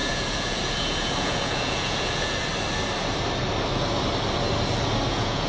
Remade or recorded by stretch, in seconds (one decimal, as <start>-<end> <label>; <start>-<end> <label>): 0.0-2.5 remade; 2.5-5.1 recorded; 5.1-5.5 remade